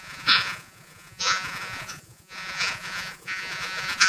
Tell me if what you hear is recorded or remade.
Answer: remade